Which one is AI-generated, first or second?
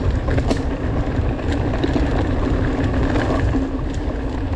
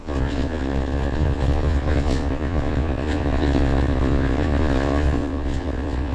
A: second